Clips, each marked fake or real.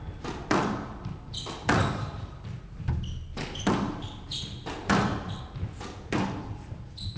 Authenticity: real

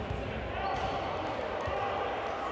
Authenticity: real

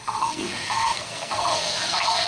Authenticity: fake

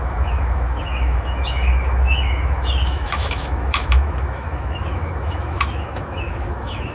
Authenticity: fake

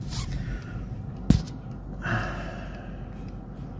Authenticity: real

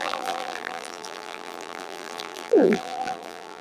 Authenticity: fake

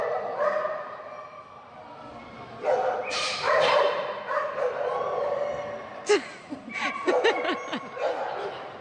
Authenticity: real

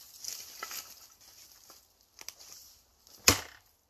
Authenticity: real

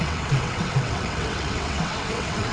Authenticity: fake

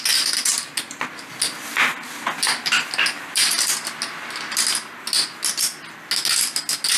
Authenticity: real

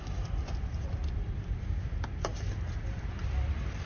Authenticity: fake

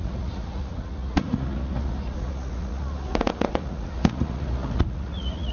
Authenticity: fake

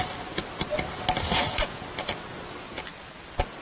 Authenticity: real